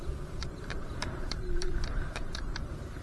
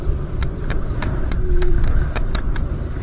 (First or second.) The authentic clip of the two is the second